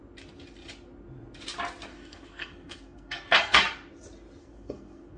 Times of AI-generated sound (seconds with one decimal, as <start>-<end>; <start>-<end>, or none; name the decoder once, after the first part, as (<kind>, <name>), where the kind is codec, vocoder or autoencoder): 1.9-3.6 (codec, SNAC); 4.4-5.2